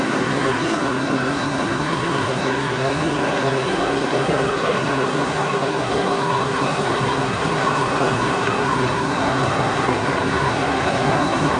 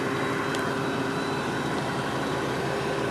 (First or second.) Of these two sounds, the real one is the second